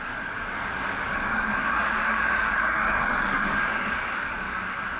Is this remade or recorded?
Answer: remade